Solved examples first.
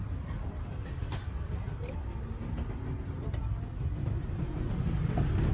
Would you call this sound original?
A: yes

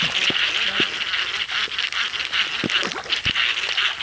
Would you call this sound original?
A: yes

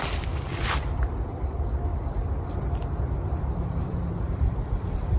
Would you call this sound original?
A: no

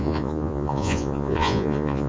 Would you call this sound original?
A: no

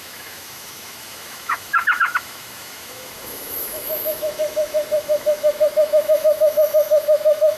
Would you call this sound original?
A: no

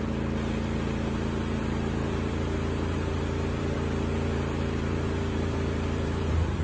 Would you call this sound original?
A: no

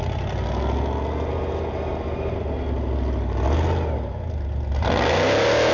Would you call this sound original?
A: yes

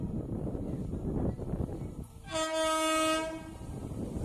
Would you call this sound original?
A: yes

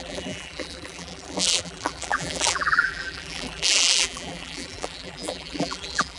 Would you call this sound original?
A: no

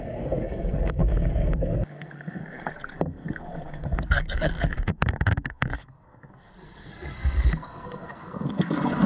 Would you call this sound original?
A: no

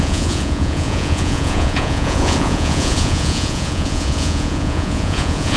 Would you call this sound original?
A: no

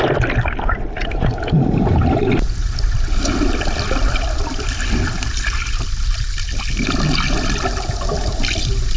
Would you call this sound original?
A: yes